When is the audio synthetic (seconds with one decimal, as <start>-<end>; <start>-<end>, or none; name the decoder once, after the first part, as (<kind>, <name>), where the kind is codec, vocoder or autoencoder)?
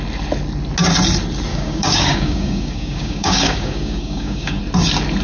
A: 1.5-4.6 (codec, DAC)